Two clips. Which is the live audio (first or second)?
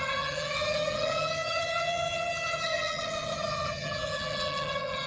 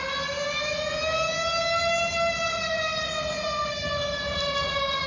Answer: second